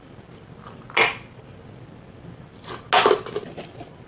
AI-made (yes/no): no